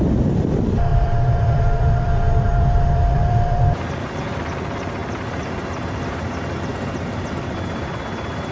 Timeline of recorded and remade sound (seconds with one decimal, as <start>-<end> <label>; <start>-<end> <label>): 0.0-0.9 recorded; 0.9-4.1 remade; 4.1-5.0 recorded; 5.0-5.8 remade; 5.8-6.7 recorded; 6.7-7.9 remade; 7.9-8.5 recorded

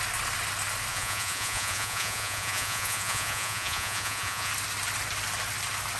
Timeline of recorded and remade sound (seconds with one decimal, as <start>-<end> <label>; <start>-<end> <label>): 0.0-0.9 recorded; 0.9-4.5 remade; 4.5-6.0 recorded

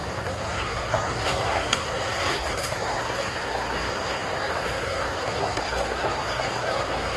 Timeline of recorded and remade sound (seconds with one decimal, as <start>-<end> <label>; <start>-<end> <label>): 0.0-7.2 remade

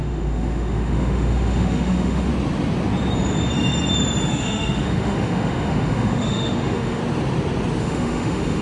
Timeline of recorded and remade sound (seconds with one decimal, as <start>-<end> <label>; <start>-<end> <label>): 0.0-2.3 remade; 2.3-4.3 recorded; 4.3-7.0 remade; 7.0-7.8 recorded; 7.8-8.6 remade

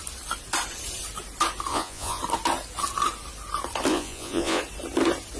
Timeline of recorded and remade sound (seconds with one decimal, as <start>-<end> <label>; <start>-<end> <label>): 0.0-1.7 recorded; 1.7-2.2 remade; 2.2-3.9 recorded; 3.9-4.6 remade; 4.6-5.4 recorded